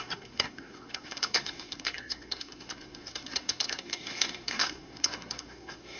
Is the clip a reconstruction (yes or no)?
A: yes